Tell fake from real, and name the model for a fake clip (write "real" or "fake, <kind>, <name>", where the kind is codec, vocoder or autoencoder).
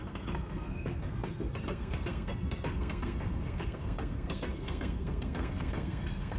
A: fake, codec, SNAC